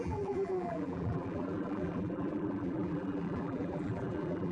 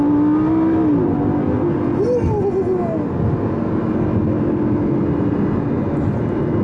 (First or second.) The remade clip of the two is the first